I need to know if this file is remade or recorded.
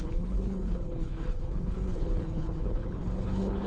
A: remade